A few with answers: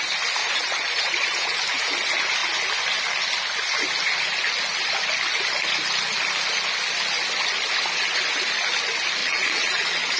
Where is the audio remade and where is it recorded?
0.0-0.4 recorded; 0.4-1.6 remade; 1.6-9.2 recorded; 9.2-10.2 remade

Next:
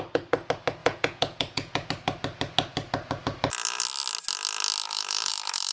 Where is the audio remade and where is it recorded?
0.0-0.8 recorded; 0.8-1.9 remade; 1.9-5.7 recorded

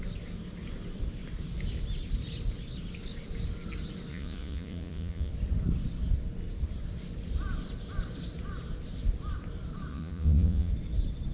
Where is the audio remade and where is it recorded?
0.0-4.1 recorded; 4.1-5.3 remade; 5.3-9.9 recorded; 9.9-10.7 remade; 10.7-11.3 recorded

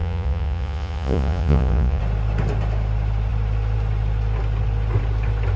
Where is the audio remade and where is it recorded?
0.0-2.0 remade; 2.0-5.6 recorded

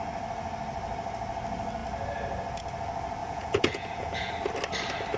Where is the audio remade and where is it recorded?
0.0-3.2 recorded; 3.2-4.3 remade; 4.3-5.2 recorded

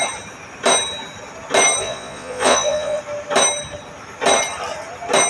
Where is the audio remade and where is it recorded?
0.0-1.8 recorded; 1.8-3.0 remade; 3.0-5.3 recorded